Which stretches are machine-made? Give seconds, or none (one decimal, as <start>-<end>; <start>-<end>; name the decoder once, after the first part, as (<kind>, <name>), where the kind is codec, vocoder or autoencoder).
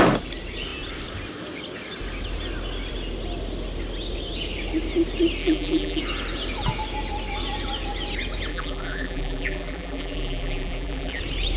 5.4-6.0 (vocoder, BigVGAN v2); 8.5-11.2